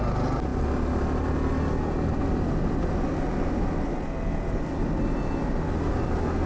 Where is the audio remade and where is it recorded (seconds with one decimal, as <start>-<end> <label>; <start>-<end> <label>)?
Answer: 0.0-6.5 recorded